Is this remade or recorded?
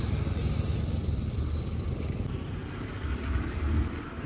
recorded